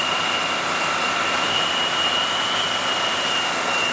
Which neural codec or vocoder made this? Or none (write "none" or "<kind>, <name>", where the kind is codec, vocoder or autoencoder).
vocoder, BigVGAN v2